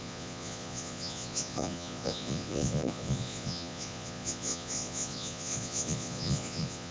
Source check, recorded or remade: remade